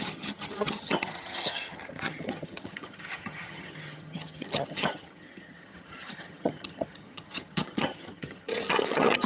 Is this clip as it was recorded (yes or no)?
no